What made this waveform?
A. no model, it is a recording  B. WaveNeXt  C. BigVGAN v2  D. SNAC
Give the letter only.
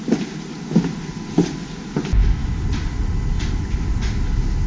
A